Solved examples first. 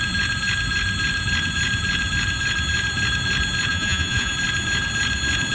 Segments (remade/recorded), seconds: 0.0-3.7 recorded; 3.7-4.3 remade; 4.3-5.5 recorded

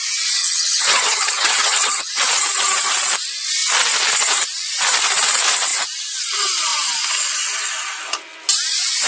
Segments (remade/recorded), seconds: 0.0-0.4 recorded; 0.4-2.1 remade; 2.1-9.1 recorded

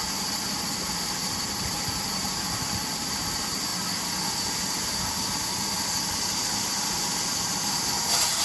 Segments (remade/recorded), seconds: 0.0-3.7 remade; 3.7-4.6 recorded; 4.6-8.4 remade